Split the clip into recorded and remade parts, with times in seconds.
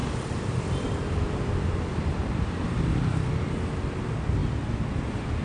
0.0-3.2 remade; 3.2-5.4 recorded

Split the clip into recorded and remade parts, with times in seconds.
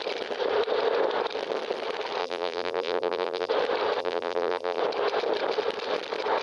0.0-2.2 recorded; 2.2-3.5 remade; 3.5-4.0 recorded; 4.0-4.8 remade; 4.8-6.4 recorded